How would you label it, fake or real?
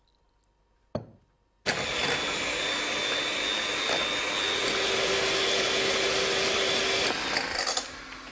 real